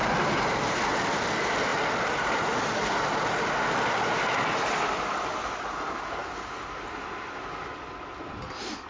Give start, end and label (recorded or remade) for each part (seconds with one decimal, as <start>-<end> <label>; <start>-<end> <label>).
0.0-8.9 recorded